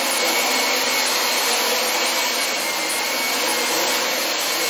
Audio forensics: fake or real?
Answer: real